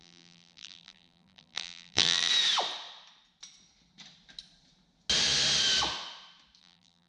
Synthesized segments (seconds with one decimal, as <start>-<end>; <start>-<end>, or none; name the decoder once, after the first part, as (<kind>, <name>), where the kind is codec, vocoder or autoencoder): 0.0-2.3 (vocoder, BigVGAN v2); 6.6-7.1